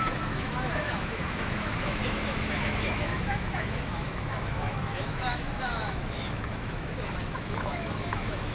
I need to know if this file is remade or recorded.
remade